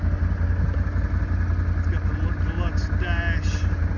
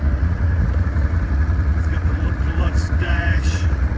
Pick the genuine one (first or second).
first